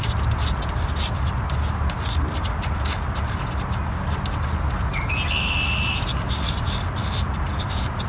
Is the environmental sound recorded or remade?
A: recorded